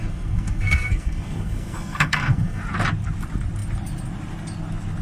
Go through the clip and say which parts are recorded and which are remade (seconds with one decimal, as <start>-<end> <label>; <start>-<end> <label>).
0.0-2.6 remade; 2.6-5.0 recorded